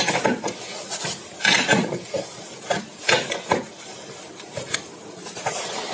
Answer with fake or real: real